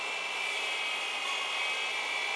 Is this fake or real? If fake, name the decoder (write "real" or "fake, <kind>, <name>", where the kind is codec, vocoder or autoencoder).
real